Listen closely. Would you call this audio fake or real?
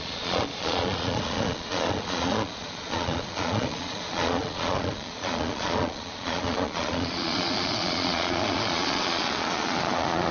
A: fake